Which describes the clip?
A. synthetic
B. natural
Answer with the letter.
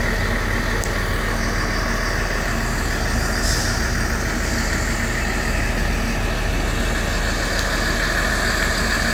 B